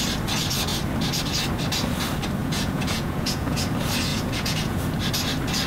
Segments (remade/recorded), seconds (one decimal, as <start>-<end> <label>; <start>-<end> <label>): 0.0-2.4 recorded; 2.4-3.6 remade; 3.6-4.1 recorded; 4.1-4.8 remade; 4.8-5.7 recorded